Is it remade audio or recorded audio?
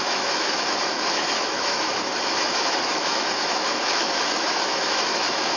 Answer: remade